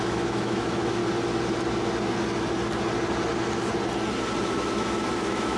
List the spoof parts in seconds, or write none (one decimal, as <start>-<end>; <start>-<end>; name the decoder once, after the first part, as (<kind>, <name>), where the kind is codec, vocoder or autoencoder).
0.0-1.0 (autoencoder, DAC-VAE); 4.4-5.6